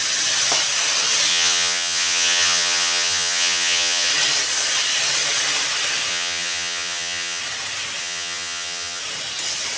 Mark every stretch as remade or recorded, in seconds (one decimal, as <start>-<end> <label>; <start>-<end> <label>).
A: 0.0-1.3 recorded; 1.3-4.1 remade; 4.1-6.1 recorded; 6.1-7.4 remade; 7.4-8.0 recorded; 8.0-9.0 remade; 9.0-9.8 recorded